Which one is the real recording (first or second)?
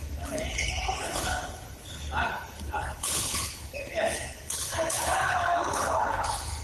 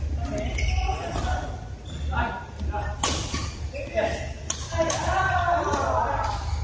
second